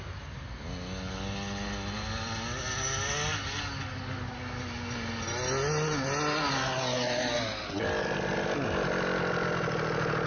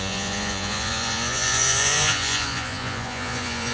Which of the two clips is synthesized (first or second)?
second